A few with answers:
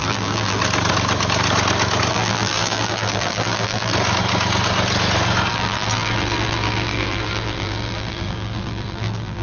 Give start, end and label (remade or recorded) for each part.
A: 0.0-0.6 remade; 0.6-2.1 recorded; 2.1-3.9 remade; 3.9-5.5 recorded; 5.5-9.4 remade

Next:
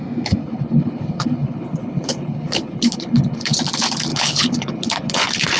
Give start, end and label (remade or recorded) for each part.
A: 0.0-0.4 recorded; 0.4-3.6 remade; 3.6-4.1 recorded; 4.1-5.6 remade

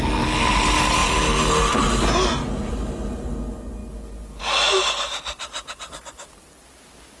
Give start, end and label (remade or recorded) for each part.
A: 0.0-7.2 recorded

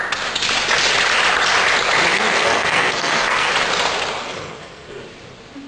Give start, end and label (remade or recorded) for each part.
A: 0.0-2.1 recorded; 2.1-3.5 remade; 3.5-4.2 recorded; 4.2-5.0 remade; 5.0-5.7 recorded